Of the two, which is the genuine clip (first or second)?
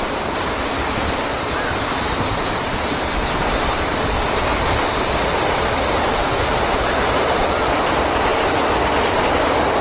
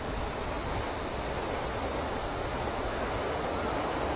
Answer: second